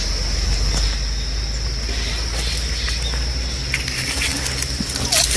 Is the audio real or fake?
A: real